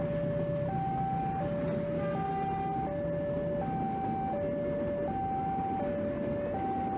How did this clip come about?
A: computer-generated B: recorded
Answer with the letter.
B